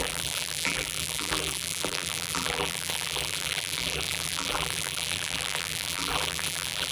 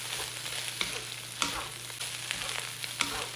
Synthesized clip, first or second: first